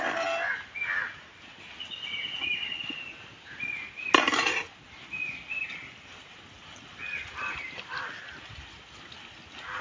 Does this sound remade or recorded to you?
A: recorded